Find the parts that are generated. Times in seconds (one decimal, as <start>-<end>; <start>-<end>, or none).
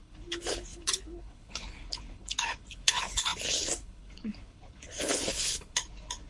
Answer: 0.0-6.3